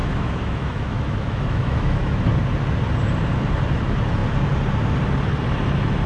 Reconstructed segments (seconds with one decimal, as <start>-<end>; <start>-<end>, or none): 0.0-2.2